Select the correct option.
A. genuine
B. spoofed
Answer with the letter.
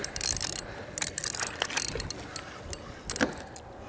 A